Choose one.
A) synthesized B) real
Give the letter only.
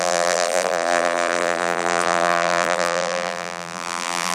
A